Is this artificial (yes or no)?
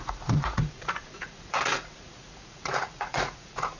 yes